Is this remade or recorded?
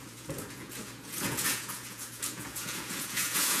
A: remade